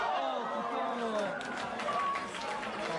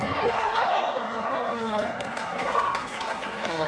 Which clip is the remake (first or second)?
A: second